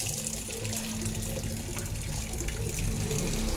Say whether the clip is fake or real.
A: real